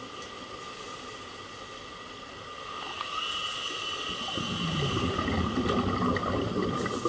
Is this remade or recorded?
recorded